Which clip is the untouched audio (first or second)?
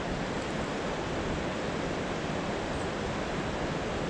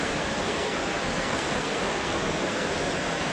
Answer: first